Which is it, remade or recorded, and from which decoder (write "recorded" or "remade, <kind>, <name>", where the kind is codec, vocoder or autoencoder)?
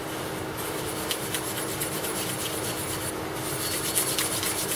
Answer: recorded